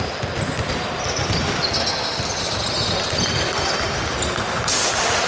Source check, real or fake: real